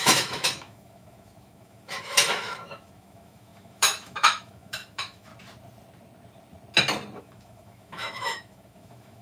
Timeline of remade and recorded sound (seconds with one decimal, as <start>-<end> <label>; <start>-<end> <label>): 0.0-5.3 remade; 5.3-7.2 recorded; 7.2-9.2 remade